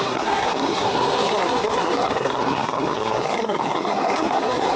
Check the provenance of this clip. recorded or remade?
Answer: remade